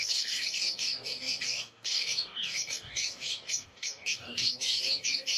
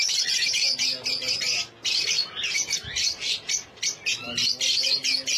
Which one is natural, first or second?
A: second